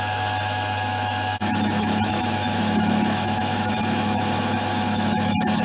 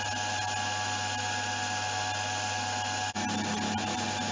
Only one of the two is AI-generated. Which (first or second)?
first